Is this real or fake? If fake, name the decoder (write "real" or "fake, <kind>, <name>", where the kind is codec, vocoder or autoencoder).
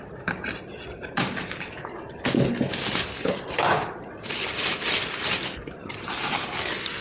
real